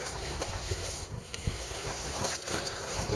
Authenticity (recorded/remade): remade